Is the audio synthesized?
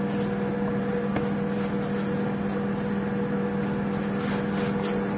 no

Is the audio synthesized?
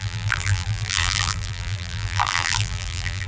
yes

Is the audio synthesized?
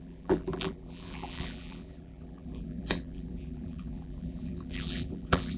yes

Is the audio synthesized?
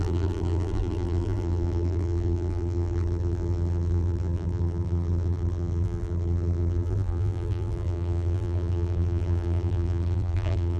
yes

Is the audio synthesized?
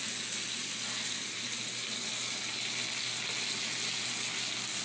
no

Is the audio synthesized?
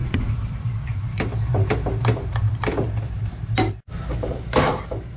yes